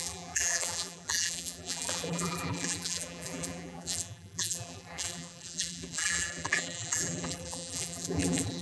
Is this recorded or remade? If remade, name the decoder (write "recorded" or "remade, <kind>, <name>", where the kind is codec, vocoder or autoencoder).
remade, vocoder, BigVGAN v2